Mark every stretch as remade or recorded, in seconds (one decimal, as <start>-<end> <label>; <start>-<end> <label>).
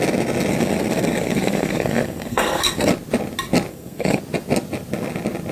0.0-0.5 recorded; 0.5-2.9 remade; 2.9-3.7 recorded; 3.7-4.2 remade; 4.2-5.5 recorded